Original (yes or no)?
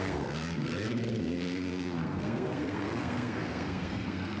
no